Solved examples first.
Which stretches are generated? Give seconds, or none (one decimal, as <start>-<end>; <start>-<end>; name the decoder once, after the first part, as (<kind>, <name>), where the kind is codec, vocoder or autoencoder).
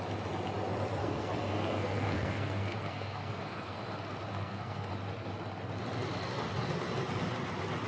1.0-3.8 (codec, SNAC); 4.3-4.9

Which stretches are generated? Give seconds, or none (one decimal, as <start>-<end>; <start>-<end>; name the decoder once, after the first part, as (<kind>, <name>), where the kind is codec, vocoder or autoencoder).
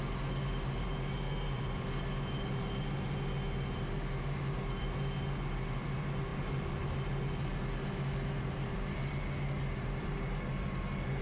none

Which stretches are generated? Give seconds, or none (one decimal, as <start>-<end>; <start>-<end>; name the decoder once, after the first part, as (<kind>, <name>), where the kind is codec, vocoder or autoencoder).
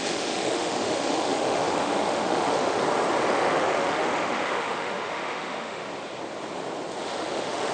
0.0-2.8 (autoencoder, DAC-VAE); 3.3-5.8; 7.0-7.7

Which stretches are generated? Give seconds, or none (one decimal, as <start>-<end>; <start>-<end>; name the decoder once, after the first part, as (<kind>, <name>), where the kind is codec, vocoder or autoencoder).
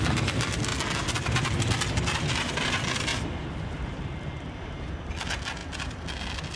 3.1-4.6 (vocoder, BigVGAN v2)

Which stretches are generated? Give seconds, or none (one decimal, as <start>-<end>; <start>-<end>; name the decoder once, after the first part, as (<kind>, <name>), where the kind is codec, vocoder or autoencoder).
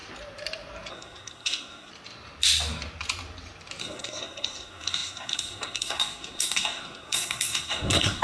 0.9-1.9 (codec, SNAC); 3.8-8.2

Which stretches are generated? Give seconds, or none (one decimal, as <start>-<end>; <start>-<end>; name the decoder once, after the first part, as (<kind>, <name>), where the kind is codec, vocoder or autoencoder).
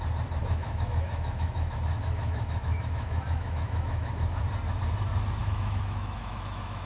0.4-4.4 (autoencoder, DAC-VAE); 5.4-6.9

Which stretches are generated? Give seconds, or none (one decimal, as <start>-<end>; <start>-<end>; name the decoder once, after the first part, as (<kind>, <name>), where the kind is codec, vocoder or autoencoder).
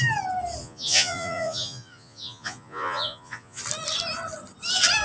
0.6-3.6 (vocoder, Vocos)